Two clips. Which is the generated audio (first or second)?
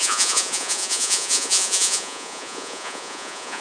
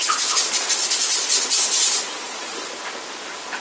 first